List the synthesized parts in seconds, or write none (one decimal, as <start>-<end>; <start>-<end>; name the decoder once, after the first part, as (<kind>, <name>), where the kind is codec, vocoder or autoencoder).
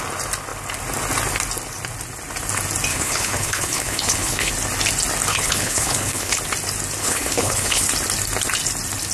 2.9-4.5 (codec, HILCodec); 5.3-6.4; 7.0-7.9